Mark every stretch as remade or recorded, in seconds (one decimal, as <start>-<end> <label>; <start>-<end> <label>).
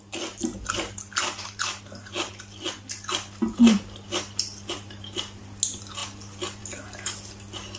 0.0-7.8 recorded